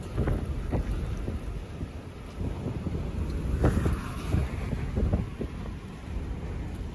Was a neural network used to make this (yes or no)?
no